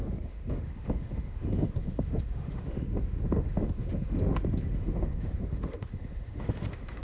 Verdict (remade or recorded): remade